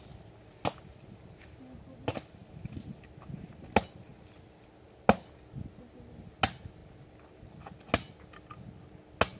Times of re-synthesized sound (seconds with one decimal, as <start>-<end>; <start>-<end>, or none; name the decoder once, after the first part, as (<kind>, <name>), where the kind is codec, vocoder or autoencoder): none